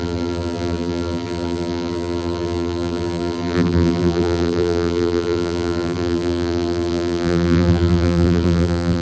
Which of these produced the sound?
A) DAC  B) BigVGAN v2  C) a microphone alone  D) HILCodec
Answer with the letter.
B